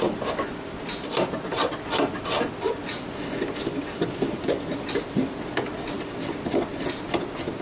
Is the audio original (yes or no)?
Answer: yes